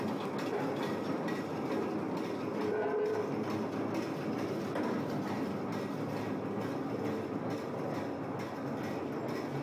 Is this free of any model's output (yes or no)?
yes